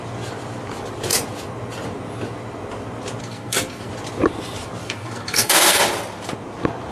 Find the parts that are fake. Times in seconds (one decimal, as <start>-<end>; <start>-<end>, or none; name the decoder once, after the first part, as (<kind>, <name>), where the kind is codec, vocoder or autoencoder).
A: 3.2-3.9 (codec, SNAC); 4.8-5.8